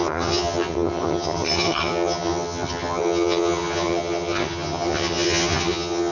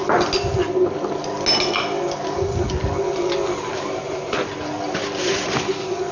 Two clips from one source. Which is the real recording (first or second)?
second